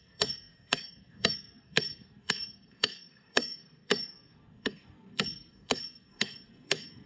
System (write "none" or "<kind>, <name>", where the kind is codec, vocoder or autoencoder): codec, SNAC